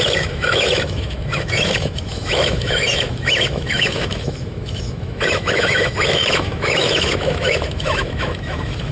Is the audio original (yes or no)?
no